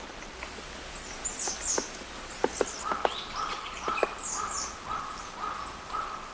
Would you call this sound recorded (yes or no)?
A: yes